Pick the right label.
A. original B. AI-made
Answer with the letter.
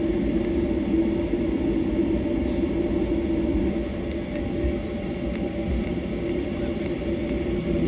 A